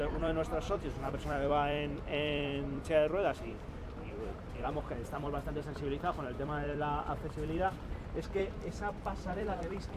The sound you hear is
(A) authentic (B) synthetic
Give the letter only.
B